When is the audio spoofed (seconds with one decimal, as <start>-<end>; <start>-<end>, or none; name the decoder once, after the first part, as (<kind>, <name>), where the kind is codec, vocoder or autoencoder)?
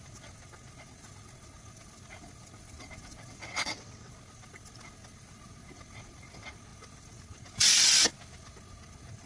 3.4-4.1 (vocoder, WaveNeXt)